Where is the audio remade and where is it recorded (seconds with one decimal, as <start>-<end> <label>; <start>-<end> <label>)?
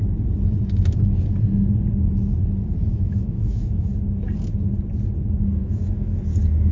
0.0-2.9 recorded; 2.9-3.9 remade; 3.9-5.6 recorded; 5.6-6.2 remade; 6.2-6.7 recorded